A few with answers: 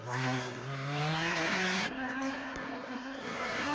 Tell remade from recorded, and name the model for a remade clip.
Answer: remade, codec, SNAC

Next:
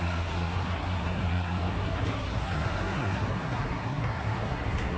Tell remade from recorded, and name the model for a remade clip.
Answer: remade, codec, SNAC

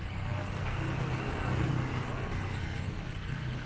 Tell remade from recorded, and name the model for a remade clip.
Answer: remade, codec, SNAC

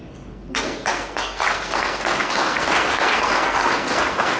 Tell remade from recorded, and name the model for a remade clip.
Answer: remade, codec, SNAC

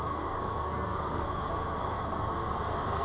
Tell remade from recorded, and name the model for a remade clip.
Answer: remade, codec, SNAC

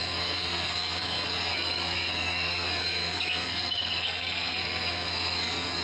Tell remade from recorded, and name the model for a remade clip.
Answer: remade, codec, SNAC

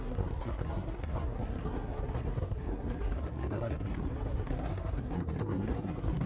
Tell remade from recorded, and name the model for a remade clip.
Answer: remade, codec, SNAC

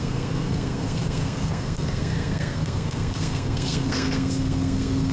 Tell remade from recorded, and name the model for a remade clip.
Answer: remade, codec, SNAC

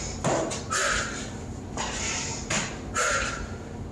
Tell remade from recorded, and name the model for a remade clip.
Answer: recorded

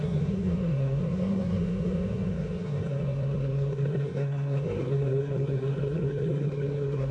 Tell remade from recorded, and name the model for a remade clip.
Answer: remade, codec, SNAC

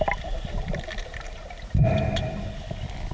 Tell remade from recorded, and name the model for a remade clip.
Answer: recorded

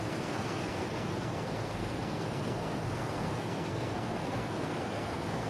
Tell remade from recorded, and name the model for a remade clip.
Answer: remade, codec, SNAC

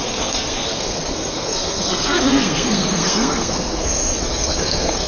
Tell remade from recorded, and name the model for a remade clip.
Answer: remade, codec, SNAC